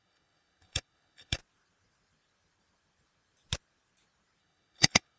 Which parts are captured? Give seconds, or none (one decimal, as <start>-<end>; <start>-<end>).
1.4-4.4